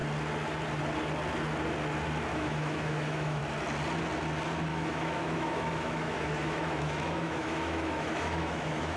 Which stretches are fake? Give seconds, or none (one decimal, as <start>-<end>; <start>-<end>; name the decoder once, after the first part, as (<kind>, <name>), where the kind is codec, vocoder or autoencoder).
2.3-3.4 (autoencoder, DAC-VAE); 4.7-9.0